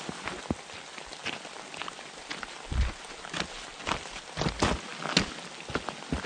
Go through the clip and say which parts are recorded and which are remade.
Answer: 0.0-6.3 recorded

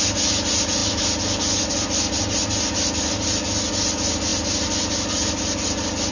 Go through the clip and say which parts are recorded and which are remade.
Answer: 0.0-6.1 recorded

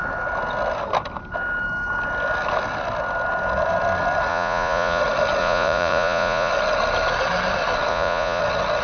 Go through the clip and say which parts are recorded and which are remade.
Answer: 0.0-4.3 recorded; 4.3-5.0 remade; 5.0-5.4 recorded; 5.4-6.5 remade; 6.5-7.9 recorded; 7.9-8.4 remade; 8.4-8.8 recorded

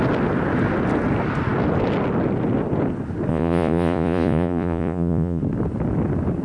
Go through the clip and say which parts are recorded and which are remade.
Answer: 0.0-3.3 recorded; 3.3-5.4 remade; 5.4-6.4 recorded

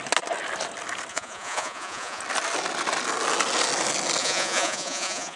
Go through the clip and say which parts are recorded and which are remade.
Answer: 0.0-1.1 recorded; 1.1-2.2 remade; 2.2-4.2 recorded; 4.2-5.4 remade

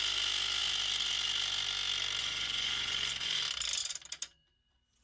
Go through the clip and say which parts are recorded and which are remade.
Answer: 0.0-2.2 recorded; 2.2-3.4 remade; 3.4-5.0 recorded